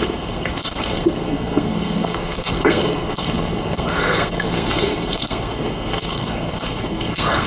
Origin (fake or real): fake